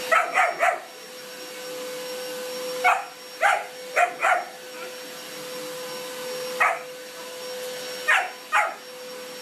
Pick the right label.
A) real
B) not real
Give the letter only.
A